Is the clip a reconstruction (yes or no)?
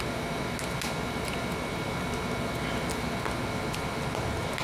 no